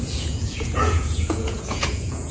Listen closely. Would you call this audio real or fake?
fake